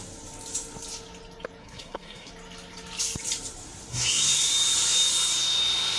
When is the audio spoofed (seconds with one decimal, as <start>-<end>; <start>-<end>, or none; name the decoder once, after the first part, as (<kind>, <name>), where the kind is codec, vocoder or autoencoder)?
1.6-2.3 (codec, SNAC); 3.9-4.5